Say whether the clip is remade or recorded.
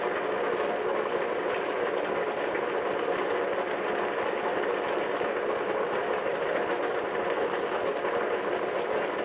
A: recorded